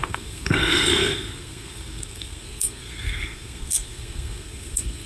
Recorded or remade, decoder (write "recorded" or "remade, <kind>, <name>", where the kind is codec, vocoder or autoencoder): remade, codec, SNAC